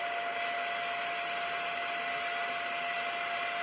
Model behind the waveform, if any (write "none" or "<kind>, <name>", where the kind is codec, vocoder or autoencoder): none